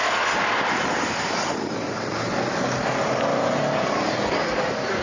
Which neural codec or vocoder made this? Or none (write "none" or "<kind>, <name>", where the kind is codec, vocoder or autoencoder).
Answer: none